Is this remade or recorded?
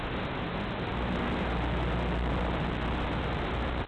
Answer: recorded